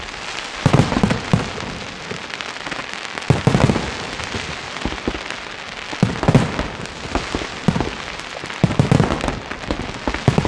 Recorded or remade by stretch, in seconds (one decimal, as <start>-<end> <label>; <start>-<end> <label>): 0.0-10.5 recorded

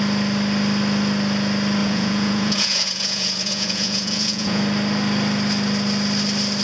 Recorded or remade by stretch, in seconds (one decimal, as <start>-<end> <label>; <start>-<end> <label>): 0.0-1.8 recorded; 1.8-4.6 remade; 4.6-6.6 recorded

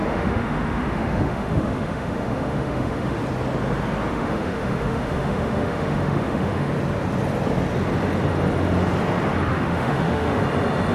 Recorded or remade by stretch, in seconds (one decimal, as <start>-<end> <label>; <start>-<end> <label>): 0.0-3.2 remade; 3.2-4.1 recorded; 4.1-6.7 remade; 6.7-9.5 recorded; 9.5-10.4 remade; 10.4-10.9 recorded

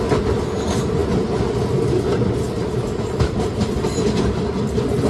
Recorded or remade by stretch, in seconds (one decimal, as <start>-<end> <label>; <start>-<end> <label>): 0.0-5.1 recorded

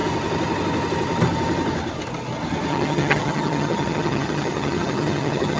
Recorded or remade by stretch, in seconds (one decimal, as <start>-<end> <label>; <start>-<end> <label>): 0.0-2.7 recorded; 2.7-5.6 remade

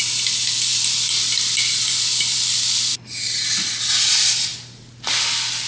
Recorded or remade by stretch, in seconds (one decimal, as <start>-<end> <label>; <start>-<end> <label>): 0.0-5.7 recorded

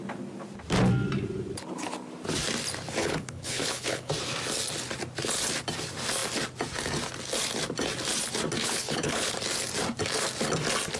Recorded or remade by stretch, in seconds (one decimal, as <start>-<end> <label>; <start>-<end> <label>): 0.0-3.0 recorded; 3.0-4.1 remade; 4.1-8.6 recorded; 8.6-9.3 remade; 9.3-11.0 recorded